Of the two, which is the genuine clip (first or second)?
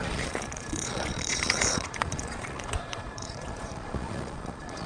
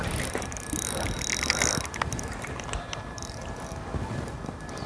second